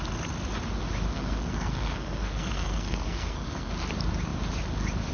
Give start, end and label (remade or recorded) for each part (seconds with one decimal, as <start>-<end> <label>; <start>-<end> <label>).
0.0-1.1 recorded; 1.1-3.7 remade; 3.7-5.1 recorded